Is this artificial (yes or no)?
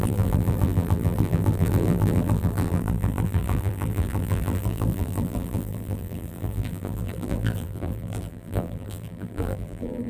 yes